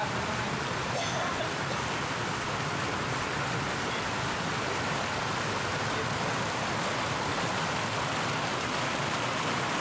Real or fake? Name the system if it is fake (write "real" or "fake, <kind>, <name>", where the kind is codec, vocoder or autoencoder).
fake, vocoder, BigVGAN v2